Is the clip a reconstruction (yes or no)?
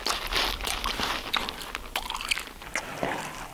no